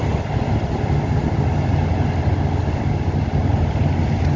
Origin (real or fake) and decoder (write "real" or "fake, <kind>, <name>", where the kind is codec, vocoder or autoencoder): real